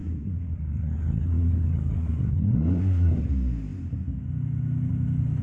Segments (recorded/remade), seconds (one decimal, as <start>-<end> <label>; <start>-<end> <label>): 0.0-3.2 remade; 3.2-5.4 recorded